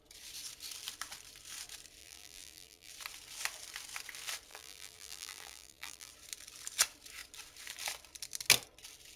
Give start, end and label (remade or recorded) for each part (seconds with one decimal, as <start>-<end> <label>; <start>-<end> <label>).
0.0-2.0 recorded; 2.0-2.9 remade; 2.9-4.5 recorded; 4.5-6.1 remade; 6.1-9.2 recorded